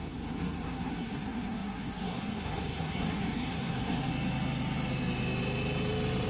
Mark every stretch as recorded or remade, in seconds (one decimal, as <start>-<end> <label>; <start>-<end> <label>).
0.0-4.1 remade; 4.1-6.3 recorded